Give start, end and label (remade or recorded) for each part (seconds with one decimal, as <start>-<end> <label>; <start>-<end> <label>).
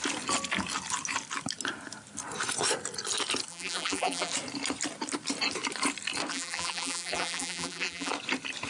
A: 0.0-3.5 recorded; 3.5-4.3 remade; 4.3-6.3 recorded; 6.3-8.1 remade; 8.1-8.7 recorded